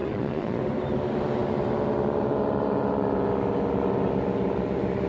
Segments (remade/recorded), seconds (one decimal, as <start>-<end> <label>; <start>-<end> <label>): 0.0-0.6 remade; 0.6-5.1 recorded